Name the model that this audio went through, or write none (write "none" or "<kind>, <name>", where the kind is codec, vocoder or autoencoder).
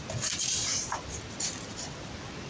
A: none